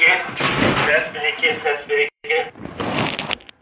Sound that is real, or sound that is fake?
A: fake